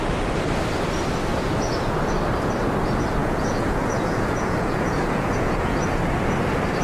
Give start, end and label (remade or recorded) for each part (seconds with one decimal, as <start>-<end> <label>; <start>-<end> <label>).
0.0-1.3 recorded; 1.3-2.1 remade; 2.1-3.2 recorded; 3.2-5.8 remade; 5.8-6.8 recorded